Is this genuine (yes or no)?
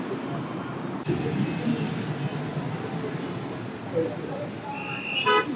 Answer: yes